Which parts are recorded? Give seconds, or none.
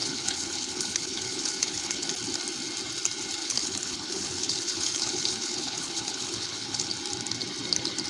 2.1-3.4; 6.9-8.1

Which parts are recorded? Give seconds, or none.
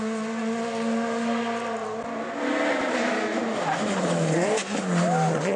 0.0-5.6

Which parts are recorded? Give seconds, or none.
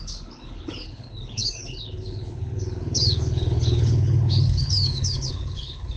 none